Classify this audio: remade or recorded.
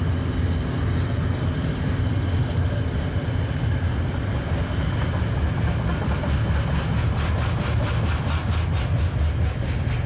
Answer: recorded